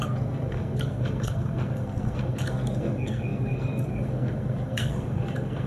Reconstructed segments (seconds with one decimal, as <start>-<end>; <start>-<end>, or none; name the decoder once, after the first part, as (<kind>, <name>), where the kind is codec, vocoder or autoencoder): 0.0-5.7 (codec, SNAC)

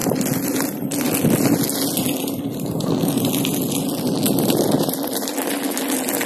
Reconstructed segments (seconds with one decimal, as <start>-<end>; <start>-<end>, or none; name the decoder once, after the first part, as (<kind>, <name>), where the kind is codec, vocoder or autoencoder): none

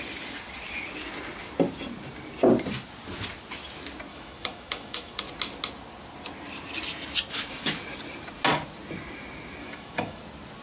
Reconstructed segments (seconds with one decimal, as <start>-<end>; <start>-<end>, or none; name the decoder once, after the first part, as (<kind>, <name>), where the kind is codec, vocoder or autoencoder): 4.1-5.2 (autoencoder, DAC-VAE); 9.6-10.2

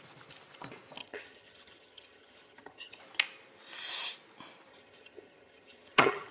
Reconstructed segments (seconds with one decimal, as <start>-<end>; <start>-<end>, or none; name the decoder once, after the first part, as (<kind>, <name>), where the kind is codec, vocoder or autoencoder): 1.0-3.0 (vocoder, HiFi-GAN); 4.7-6.3